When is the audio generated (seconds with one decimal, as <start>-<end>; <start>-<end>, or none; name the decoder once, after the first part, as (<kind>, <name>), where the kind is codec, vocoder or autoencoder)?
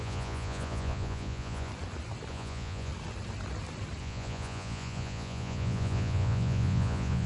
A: 0.0-1.7 (vocoder, Vocos); 2.3-2.9; 4.0-7.3